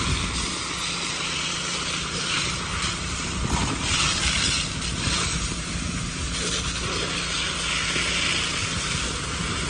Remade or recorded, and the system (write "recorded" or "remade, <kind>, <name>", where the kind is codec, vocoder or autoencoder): recorded